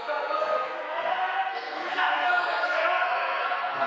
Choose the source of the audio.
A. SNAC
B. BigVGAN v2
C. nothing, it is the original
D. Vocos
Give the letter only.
A